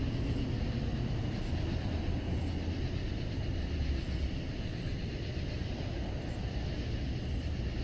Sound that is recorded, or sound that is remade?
recorded